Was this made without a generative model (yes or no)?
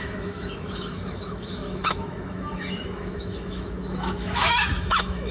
no